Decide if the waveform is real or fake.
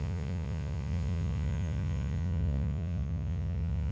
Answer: fake